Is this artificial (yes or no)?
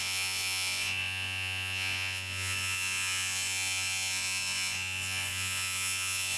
yes